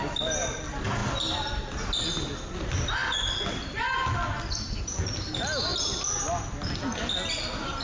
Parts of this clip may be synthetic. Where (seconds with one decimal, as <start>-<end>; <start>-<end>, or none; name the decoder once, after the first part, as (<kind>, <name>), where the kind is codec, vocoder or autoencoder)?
none